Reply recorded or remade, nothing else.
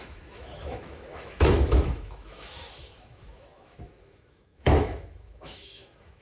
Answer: remade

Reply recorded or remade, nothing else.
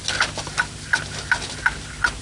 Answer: recorded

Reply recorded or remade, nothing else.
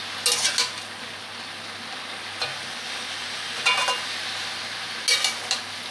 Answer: recorded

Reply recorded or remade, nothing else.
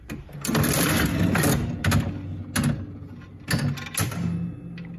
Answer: recorded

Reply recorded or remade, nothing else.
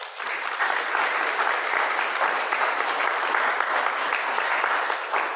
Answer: remade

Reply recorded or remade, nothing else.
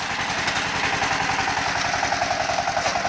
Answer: recorded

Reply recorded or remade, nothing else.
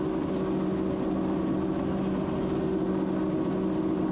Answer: recorded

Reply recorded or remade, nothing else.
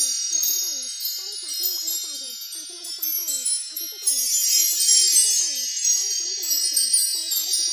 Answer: remade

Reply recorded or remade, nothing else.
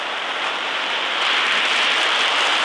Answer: remade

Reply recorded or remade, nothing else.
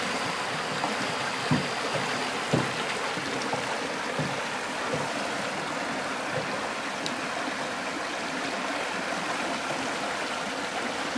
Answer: recorded